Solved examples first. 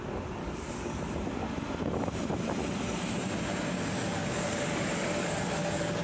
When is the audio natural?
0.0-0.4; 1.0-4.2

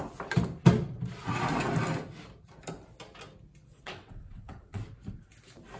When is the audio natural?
0.0-3.7; 4.8-5.8

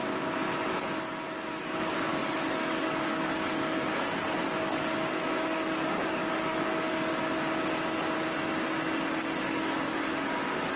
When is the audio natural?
0.0-0.8; 7.1-9.4

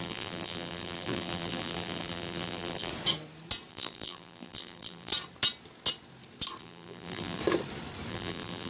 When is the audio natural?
2.9-3.7; 5.1-6.6; 7.4-8.1